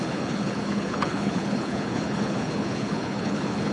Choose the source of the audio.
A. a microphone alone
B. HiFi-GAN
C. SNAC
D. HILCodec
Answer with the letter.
D